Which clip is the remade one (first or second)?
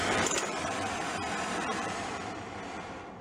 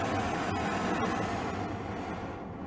first